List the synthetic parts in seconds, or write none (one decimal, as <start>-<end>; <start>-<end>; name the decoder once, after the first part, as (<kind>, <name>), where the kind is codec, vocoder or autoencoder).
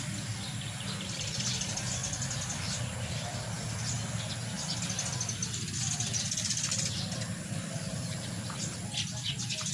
2.0-3.4 (vocoder, BigVGAN v2); 5.4-8.6